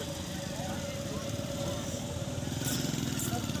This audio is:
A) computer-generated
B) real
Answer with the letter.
B